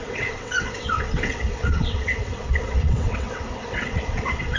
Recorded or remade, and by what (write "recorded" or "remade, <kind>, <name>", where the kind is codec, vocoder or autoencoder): remade, vocoder, WaveNeXt